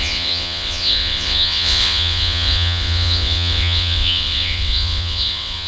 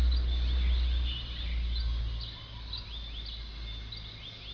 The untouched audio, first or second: second